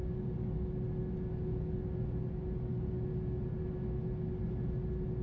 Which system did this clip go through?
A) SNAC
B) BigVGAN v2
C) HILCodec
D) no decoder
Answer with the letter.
D